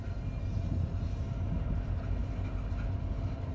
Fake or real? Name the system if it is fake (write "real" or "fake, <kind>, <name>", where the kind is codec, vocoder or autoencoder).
real